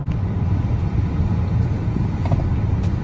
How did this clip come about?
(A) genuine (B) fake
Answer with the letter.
A